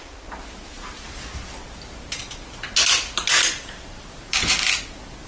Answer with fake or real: real